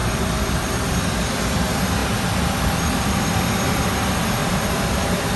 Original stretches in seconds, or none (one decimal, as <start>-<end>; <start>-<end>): 0.9-2.0; 3.3-4.4